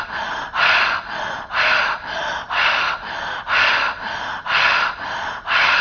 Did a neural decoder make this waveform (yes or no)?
no